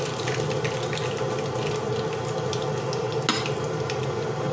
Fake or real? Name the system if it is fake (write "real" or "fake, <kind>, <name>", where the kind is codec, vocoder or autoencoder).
real